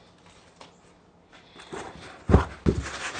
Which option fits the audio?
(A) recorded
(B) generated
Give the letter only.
A